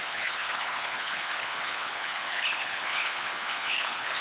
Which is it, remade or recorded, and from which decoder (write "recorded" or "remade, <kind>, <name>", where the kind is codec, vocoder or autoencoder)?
remade, codec, HILCodec